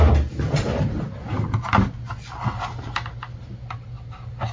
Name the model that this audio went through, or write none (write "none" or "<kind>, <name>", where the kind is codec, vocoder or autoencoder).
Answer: none